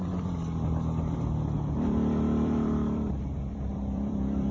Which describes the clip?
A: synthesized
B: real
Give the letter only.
A